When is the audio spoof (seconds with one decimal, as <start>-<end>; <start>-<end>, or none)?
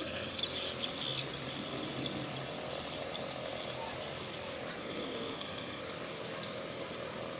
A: 0.0-0.4; 4.8-5.8